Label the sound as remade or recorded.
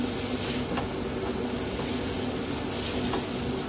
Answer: recorded